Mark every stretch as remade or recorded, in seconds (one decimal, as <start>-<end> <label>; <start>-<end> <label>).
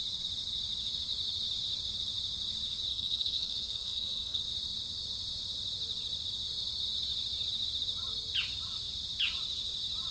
0.0-2.9 recorded; 2.9-4.4 remade; 4.4-10.1 recorded